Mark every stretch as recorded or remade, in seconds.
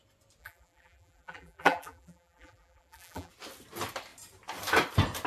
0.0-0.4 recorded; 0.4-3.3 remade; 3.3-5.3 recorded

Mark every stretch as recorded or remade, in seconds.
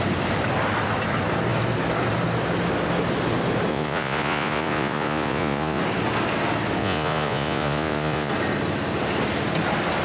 0.0-3.7 recorded; 3.7-5.8 remade; 5.8-6.8 recorded; 6.8-8.3 remade; 8.3-10.0 recorded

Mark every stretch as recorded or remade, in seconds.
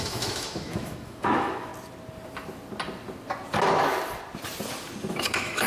0.0-1.7 remade; 1.7-5.1 recorded; 5.1-5.7 remade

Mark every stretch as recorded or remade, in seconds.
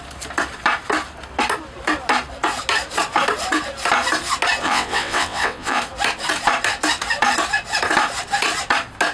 0.0-4.6 recorded; 4.6-5.8 remade; 5.8-9.1 recorded